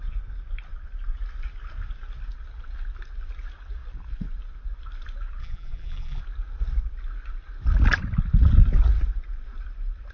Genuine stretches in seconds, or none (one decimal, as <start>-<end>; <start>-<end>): 0.0-5.4; 6.2-10.1